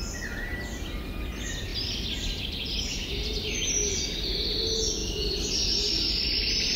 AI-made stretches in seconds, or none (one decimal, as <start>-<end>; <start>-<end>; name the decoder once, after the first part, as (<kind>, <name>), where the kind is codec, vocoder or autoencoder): none